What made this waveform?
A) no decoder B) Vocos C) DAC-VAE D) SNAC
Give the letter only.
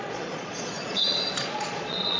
B